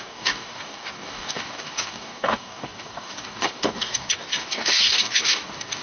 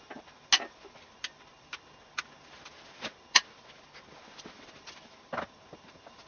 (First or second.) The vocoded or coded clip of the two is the first